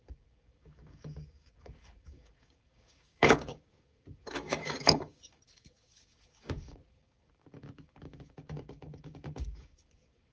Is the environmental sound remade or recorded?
remade